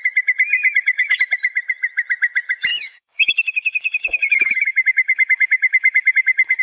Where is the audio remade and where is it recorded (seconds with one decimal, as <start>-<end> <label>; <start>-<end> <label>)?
0.0-0.5 recorded; 0.5-1.2 remade; 1.2-2.7 recorded; 2.7-6.6 remade